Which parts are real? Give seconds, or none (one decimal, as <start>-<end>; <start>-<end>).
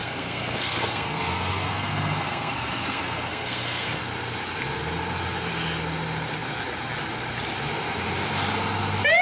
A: 4.0-9.2